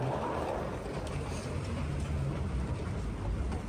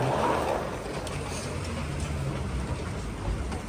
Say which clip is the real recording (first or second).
second